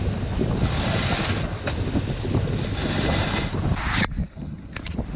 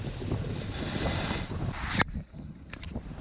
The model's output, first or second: second